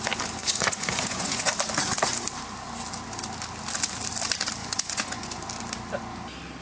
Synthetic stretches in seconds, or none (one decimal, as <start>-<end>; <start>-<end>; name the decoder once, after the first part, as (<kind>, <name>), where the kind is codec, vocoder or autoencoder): 0.4-1.5 (vocoder, Vocos); 4.6-5.4